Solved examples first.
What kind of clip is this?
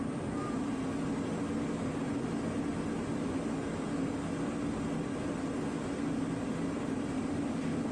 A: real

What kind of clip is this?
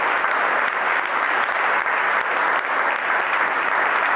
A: real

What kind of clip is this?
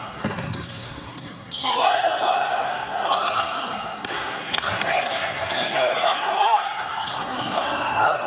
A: fake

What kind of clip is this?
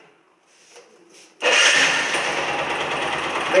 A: real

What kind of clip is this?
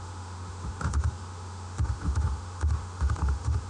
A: fake